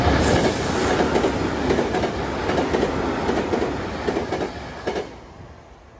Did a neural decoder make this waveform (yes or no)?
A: no